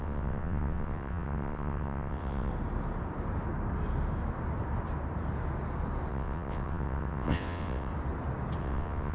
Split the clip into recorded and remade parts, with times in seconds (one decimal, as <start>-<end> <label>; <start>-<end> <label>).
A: 0.0-2.5 remade; 2.5-6.1 recorded; 6.1-7.9 remade; 7.9-8.6 recorded; 8.6-9.1 remade